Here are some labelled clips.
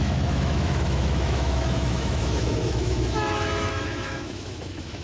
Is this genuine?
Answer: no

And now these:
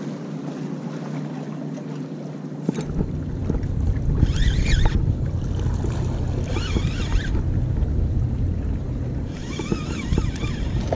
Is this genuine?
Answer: yes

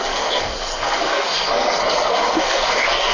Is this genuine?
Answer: no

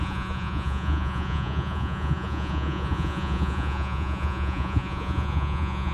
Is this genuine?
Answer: no